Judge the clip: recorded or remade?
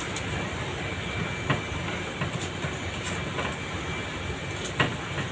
recorded